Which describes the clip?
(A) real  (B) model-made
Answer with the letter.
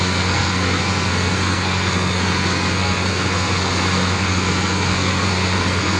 B